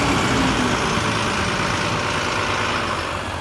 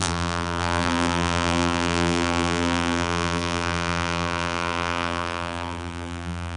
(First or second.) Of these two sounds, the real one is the first